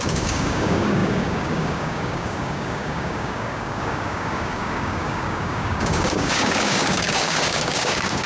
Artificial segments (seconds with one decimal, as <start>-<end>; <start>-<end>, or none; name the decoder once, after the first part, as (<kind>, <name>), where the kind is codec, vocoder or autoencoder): 0.0-8.3 (codec, DAC)